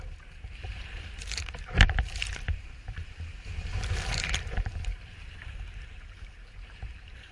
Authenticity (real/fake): fake